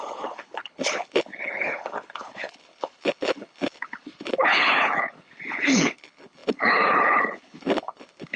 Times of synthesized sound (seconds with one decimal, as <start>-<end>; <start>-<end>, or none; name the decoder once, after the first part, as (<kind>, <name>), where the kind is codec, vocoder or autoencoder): 0.0-8.4 (codec, HILCodec)